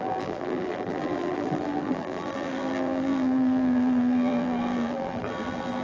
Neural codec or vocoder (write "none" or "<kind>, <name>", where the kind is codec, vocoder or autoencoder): vocoder, BigVGAN v2